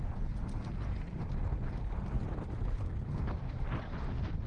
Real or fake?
real